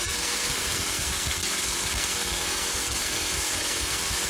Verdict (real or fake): fake